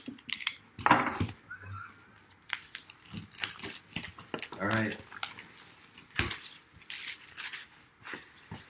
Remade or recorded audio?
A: recorded